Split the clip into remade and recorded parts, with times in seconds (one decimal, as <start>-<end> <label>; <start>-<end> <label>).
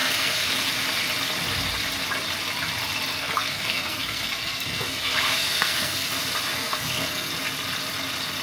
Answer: 0.0-0.7 remade; 0.7-3.1 recorded; 3.1-6.1 remade; 6.1-6.5 recorded; 6.5-7.3 remade; 7.3-8.4 recorded